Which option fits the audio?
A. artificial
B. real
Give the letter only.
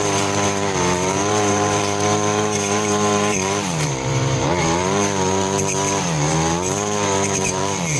A